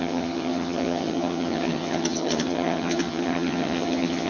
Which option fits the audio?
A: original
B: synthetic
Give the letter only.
B